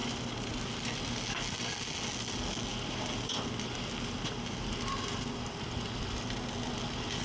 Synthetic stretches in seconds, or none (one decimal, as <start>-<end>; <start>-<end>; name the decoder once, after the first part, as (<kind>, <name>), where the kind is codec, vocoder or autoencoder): 0.0-0.6 (vocoder, BigVGAN v2); 2.7-6.0